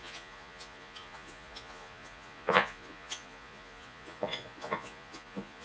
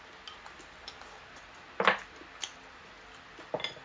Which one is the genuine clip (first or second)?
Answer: second